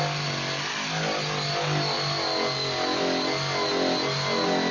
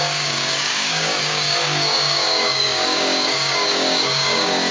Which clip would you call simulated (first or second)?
second